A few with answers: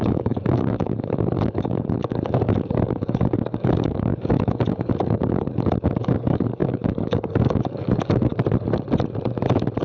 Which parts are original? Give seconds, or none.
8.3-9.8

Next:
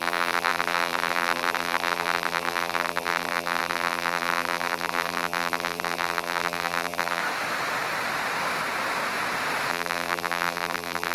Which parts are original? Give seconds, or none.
7.2-9.7

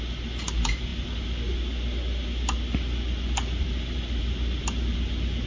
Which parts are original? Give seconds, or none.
0.0-5.5

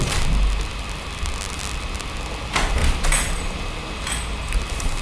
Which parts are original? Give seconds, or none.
0.0-2.8; 3.6-5.0

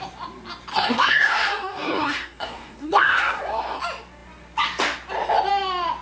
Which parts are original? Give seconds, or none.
0.0-0.7; 3.8-6.0

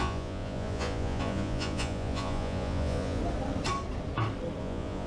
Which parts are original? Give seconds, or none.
3.2-4.6

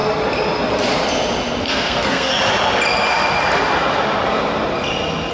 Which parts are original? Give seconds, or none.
0.0-1.6; 2.3-5.3